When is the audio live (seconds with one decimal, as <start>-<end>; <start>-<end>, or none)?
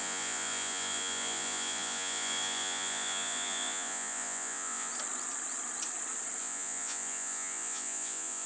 4.9-6.4